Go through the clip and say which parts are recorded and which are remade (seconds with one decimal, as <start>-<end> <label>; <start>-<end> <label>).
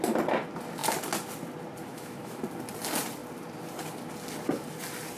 0.0-1.9 recorded; 1.9-2.4 remade; 2.4-5.2 recorded